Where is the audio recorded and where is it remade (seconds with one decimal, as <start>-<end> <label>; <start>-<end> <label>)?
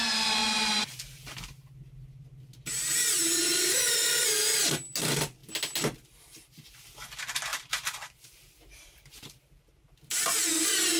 0.0-0.4 recorded; 0.4-1.0 remade; 1.0-3.2 recorded; 3.2-4.2 remade; 4.2-7.5 recorded; 7.5-9.9 remade; 9.9-11.0 recorded